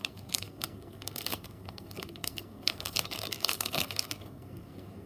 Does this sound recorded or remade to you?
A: remade